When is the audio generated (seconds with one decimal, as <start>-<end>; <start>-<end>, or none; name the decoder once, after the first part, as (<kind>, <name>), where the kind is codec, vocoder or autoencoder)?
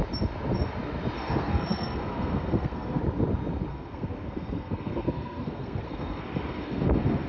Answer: 1.2-3.0 (codec, SNAC); 3.7-7.3